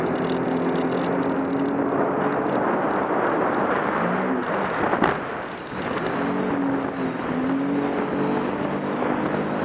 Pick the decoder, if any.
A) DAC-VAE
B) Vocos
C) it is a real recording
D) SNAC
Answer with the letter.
C